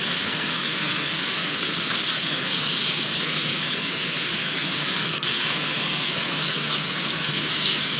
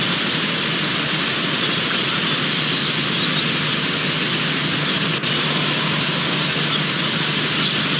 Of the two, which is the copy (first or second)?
first